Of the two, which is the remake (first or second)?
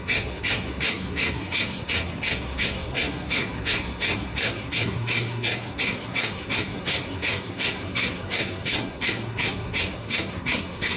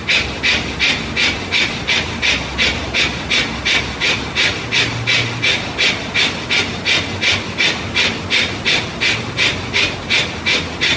first